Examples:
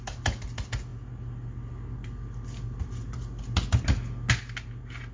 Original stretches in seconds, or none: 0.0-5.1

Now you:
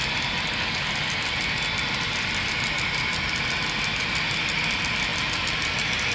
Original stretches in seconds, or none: 0.0-6.1

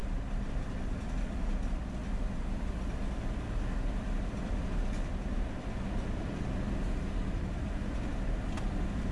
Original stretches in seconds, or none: 1.7-9.1